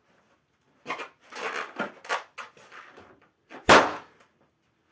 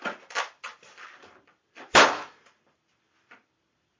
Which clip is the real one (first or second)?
first